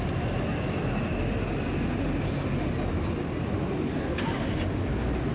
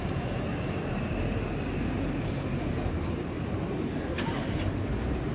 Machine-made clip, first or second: second